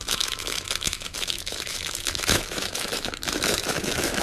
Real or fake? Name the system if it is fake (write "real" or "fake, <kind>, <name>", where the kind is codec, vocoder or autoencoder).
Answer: fake, autoencoder, DAC-VAE